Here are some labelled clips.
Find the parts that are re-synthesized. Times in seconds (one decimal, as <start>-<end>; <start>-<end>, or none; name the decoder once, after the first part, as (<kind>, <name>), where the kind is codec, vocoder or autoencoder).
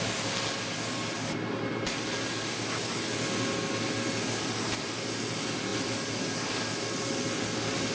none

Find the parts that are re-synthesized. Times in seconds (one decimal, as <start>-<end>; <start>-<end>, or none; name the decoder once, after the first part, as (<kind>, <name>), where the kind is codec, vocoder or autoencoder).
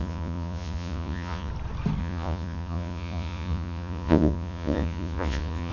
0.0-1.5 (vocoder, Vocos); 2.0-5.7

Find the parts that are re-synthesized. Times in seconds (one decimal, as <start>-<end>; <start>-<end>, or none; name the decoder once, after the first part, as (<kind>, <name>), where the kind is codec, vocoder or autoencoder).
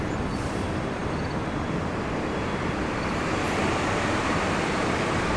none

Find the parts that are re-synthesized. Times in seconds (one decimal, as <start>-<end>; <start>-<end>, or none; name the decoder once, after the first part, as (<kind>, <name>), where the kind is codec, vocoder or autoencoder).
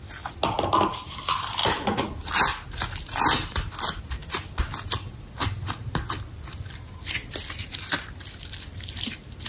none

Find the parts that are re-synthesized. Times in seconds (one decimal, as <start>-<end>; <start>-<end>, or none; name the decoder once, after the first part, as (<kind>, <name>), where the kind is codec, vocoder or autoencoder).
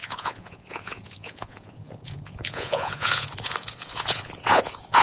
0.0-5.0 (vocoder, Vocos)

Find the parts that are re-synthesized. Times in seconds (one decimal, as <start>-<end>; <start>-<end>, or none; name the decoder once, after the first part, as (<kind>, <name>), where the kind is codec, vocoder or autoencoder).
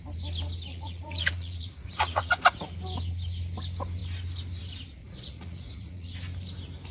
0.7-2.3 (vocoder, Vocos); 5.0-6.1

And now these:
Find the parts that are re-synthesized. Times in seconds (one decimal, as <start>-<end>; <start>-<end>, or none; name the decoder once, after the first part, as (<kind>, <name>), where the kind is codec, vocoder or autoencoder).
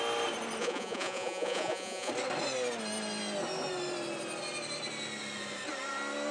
0.6-2.1 (vocoder, Vocos)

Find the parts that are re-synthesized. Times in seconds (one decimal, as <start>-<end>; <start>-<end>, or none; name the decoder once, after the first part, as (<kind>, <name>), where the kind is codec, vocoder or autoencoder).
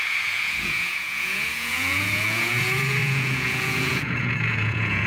0.0-5.1 (vocoder, Vocos)